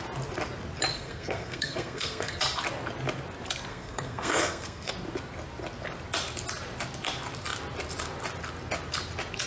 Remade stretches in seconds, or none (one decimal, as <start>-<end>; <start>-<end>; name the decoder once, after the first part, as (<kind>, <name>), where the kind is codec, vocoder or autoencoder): 0.9-2.4 (codec, SNAC); 3.7-4.9